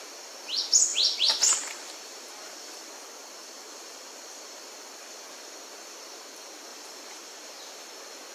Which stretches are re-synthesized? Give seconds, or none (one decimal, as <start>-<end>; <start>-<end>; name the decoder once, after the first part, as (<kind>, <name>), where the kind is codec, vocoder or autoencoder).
0.9-2.9 (vocoder, BigVGAN v2); 3.4-4.6; 6.7-7.5